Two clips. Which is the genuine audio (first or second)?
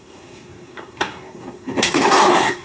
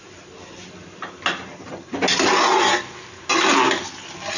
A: second